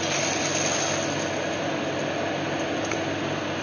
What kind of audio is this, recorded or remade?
recorded